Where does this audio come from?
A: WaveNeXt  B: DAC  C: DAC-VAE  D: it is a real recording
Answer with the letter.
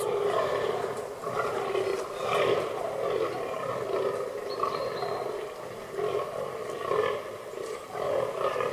D